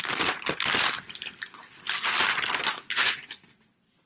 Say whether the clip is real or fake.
real